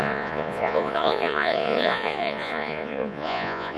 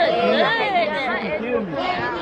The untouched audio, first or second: second